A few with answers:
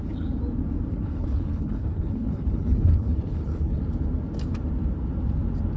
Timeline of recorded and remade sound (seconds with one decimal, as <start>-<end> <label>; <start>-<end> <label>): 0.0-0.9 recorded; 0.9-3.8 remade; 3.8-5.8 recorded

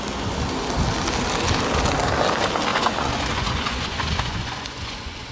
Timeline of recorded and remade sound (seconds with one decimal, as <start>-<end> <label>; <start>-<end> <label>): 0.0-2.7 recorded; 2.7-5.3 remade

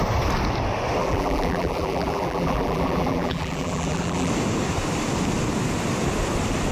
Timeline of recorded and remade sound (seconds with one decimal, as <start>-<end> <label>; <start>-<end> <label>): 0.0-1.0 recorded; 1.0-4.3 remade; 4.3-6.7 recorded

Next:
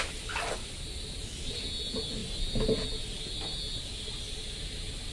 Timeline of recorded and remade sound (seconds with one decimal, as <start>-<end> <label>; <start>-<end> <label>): 0.0-5.1 recorded

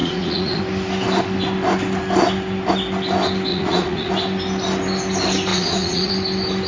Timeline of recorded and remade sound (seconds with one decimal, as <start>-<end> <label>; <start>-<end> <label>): 0.0-0.6 remade; 0.6-3.5 recorded; 3.5-4.1 remade; 4.1-5.5 recorded; 5.5-6.1 remade; 6.1-6.7 recorded